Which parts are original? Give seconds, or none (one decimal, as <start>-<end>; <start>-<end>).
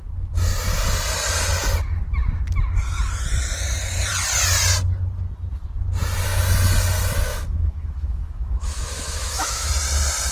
0.0-7.3; 9.7-10.3